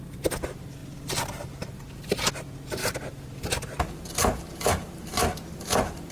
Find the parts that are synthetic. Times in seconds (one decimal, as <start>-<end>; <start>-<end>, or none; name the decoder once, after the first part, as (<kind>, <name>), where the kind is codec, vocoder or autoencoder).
0.8-2.3 (vocoder, BigVGAN v2); 2.8-6.1